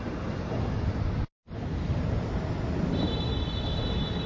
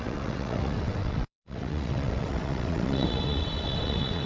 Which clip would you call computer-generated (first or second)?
second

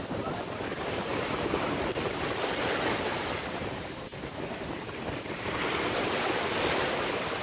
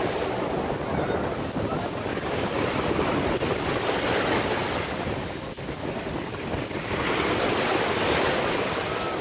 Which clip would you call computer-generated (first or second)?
first